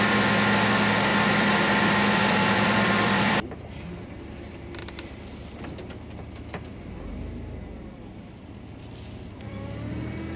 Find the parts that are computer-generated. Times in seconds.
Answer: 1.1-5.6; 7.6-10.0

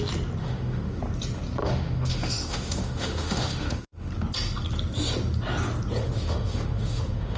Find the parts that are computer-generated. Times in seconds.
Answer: 0.4-1.0; 1.6-4.1; 6.0-7.4

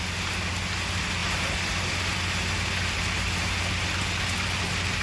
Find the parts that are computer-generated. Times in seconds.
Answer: none